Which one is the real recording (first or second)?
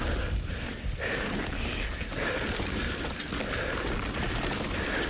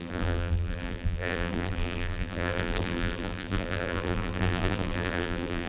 first